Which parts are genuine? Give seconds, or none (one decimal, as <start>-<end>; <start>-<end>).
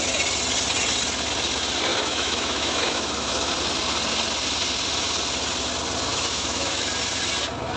0.0-1.9; 3.5-6.1; 6.9-7.8